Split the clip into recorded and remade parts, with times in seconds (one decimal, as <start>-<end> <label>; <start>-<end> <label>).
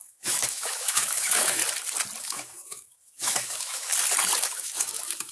0.0-1.6 remade; 1.6-2.2 recorded; 2.2-3.9 remade; 3.9-4.4 recorded; 4.4-5.3 remade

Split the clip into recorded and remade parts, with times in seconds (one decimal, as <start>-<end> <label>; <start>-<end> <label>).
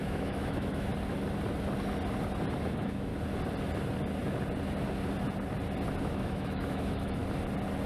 0.0-0.9 remade; 0.9-2.7 recorded; 2.7-3.1 remade; 3.1-6.0 recorded; 6.0-7.2 remade; 7.2-7.9 recorded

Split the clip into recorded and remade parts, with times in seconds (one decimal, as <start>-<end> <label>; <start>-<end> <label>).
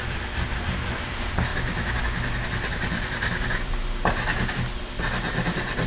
0.0-1.5 recorded; 1.5-4.5 remade; 4.5-5.9 recorded